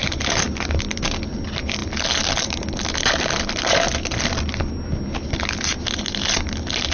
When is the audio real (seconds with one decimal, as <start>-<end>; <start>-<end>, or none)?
0.0-6.9